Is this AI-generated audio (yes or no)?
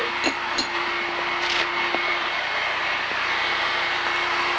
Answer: no